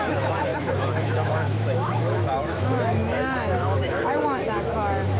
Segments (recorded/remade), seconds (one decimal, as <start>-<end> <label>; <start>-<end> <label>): 0.0-5.2 remade